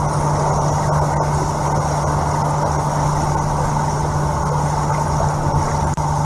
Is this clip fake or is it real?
real